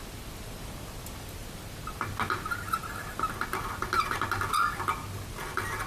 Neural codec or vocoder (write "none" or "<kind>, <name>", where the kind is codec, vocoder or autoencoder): none